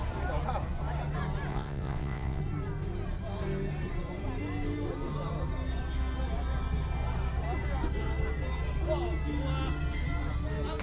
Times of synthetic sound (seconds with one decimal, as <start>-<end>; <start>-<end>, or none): 1.5-2.4